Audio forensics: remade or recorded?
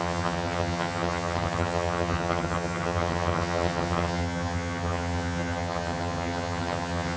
remade